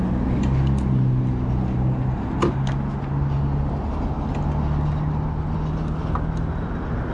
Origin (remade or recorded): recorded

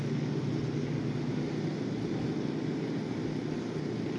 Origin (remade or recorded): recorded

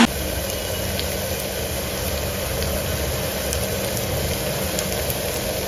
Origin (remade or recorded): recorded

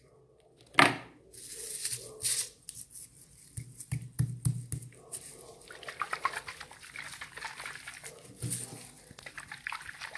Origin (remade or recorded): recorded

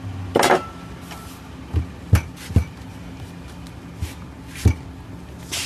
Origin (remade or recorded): recorded